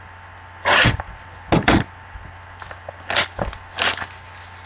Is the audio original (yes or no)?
yes